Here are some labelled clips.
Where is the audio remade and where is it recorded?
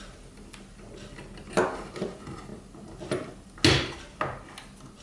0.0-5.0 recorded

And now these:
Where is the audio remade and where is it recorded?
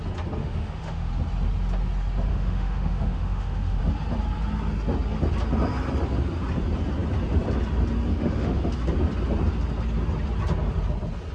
0.0-0.4 recorded; 0.4-1.1 remade; 1.1-2.3 recorded; 2.3-3.8 remade; 3.8-8.1 recorded; 8.1-8.6 remade; 8.6-11.3 recorded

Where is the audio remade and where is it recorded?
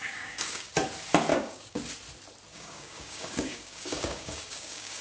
0.0-0.7 remade; 0.7-1.3 recorded; 1.3-1.8 remade; 1.8-2.5 recorded; 2.5-5.0 remade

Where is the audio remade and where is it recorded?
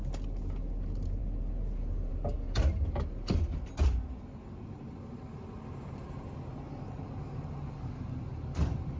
0.0-9.0 recorded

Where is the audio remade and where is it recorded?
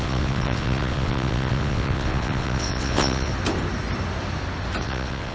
0.0-3.3 remade; 3.3-4.8 recorded; 4.8-5.3 remade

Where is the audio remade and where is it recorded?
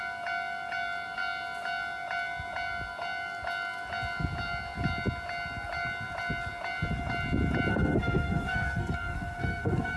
0.0-7.7 recorded; 7.7-10.0 remade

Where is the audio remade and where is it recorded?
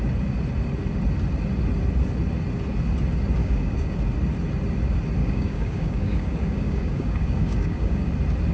0.0-3.4 recorded; 3.4-4.0 remade; 4.0-5.2 recorded; 5.2-8.1 remade; 8.1-8.5 recorded